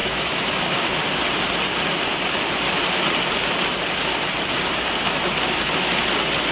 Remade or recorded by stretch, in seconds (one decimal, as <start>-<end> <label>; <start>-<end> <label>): 0.0-0.6 remade; 0.6-6.5 recorded